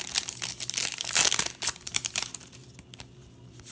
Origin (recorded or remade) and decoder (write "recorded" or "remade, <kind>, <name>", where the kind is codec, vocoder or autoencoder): recorded